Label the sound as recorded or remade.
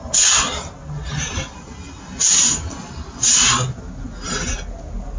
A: recorded